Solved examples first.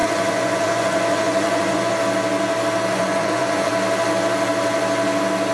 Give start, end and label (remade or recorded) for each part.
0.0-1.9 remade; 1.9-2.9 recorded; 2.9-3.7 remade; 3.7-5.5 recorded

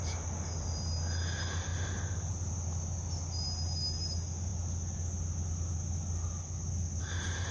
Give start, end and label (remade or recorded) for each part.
0.0-7.5 recorded

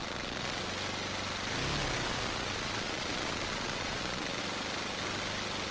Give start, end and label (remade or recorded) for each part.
0.0-0.6 remade; 0.6-2.1 recorded; 2.1-4.4 remade; 4.4-5.7 recorded